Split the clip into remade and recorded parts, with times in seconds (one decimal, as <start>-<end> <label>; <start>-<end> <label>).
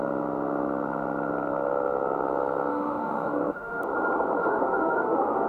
0.0-2.7 recorded; 2.7-3.8 remade; 3.8-4.4 recorded; 4.4-5.5 remade